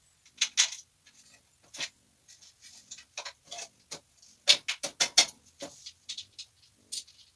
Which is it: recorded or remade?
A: recorded